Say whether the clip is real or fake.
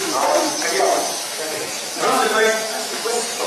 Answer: fake